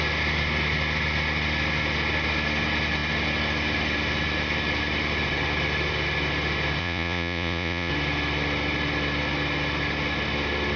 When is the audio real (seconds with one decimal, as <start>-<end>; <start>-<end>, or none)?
0.0-6.8; 7.9-10.8